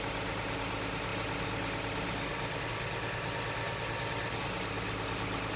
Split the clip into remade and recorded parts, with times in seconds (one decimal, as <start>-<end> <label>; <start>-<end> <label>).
0.0-5.6 recorded